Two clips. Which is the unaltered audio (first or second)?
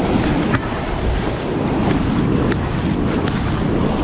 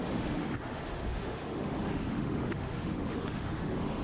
first